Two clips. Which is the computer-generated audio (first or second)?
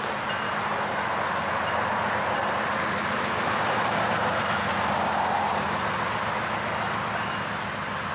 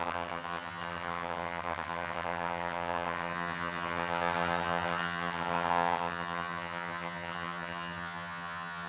second